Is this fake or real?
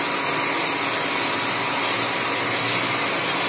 real